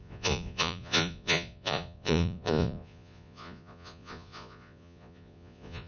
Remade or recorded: remade